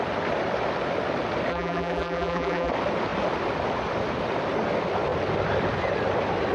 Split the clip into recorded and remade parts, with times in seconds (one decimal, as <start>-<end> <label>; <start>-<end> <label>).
0.0-1.5 recorded; 1.5-2.7 remade; 2.7-6.5 recorded